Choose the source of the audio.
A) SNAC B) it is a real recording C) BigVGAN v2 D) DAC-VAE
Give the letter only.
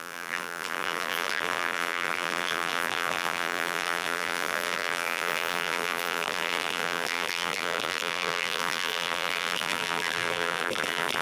C